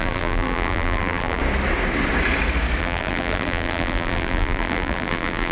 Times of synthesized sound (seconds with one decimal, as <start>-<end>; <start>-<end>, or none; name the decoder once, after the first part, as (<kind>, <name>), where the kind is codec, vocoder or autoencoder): 0.0-1.4 (vocoder, BigVGAN v2); 2.8-5.5